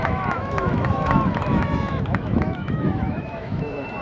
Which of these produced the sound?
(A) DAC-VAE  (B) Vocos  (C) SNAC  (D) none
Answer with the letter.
A